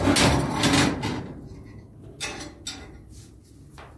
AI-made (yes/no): no